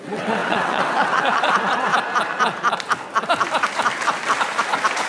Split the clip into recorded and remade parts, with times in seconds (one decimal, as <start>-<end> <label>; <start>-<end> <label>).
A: 0.0-1.9 remade; 1.9-5.1 recorded